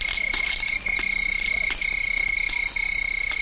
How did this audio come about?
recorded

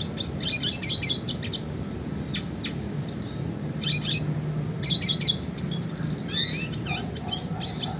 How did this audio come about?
recorded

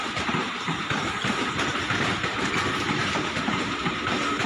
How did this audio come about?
remade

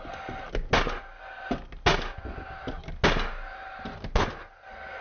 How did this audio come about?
recorded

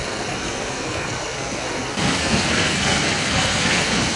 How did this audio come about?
remade